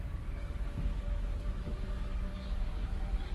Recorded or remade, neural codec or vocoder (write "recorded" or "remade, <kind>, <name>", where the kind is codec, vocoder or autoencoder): remade, codec, DAC